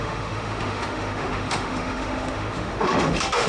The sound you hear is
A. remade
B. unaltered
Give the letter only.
A